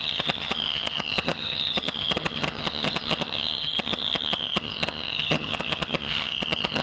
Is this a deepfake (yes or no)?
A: yes